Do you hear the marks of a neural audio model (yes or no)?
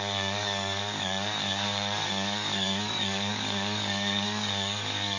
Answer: yes